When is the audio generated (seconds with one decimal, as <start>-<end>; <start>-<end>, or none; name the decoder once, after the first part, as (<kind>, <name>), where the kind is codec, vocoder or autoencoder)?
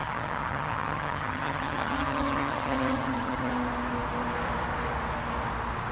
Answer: 0.0-3.5 (vocoder, HiFi-GAN)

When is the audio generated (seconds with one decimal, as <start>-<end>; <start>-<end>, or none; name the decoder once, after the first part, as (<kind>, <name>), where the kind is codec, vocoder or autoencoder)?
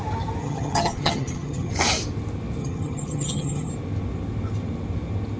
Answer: 0.4-1.7 (vocoder, HiFi-GAN); 2.6-3.7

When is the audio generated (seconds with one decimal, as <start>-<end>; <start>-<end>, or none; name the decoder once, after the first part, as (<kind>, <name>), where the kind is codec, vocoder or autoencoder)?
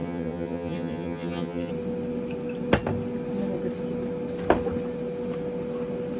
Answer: 0.0-1.7 (vocoder, HiFi-GAN)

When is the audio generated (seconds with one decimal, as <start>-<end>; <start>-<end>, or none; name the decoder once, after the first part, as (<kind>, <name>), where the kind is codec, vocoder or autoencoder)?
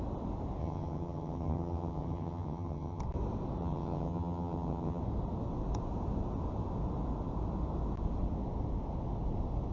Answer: 0.6-3.0 (vocoder, HiFi-GAN); 3.6-5.0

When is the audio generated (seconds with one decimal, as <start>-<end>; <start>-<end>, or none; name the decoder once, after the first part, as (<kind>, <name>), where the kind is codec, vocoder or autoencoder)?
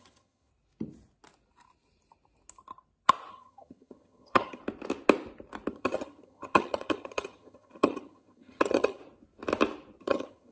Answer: 0.0-0.5 (vocoder, HiFi-GAN); 3.3-4.6; 5.7-9.0; 10.0-10.5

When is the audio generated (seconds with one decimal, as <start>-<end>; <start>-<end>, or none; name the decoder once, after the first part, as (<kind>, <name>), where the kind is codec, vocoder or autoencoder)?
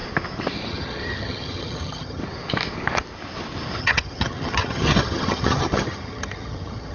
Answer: 0.7-2.2 (vocoder, HiFi-GAN); 3.8-6.9